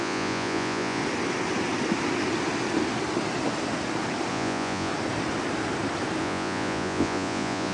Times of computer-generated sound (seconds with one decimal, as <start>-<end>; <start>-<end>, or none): 0.0-1.0; 4.3-4.9; 6.2-7.7